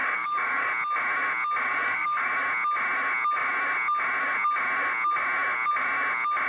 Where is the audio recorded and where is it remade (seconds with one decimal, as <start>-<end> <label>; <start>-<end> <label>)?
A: 0.0-0.7 remade; 0.7-1.7 recorded; 1.7-2.3 remade; 2.3-6.5 recorded